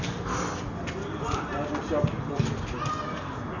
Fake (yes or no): no